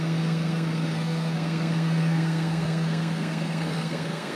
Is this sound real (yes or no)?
no